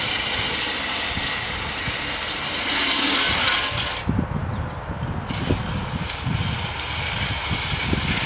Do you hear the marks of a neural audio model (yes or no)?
no